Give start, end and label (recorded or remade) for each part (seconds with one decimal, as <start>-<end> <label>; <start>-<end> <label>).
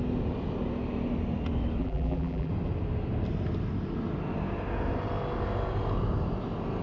0.0-1.8 recorded; 1.8-2.5 remade; 2.5-6.8 recorded